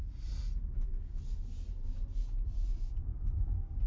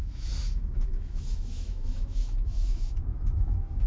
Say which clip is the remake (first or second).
second